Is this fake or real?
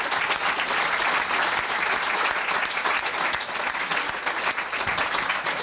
real